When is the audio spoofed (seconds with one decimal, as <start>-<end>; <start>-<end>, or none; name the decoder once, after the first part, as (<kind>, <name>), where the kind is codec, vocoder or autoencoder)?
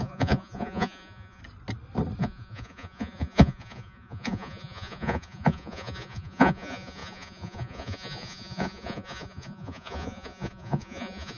0.0-1.4 (vocoder, Vocos); 2.2-11.4